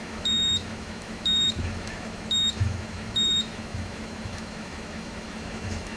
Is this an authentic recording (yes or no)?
no